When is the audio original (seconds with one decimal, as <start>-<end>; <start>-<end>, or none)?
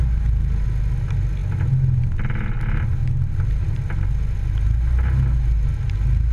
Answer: 0.0-6.3